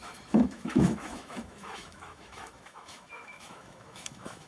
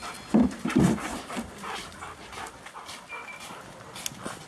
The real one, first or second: second